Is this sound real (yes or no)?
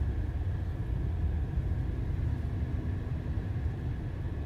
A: yes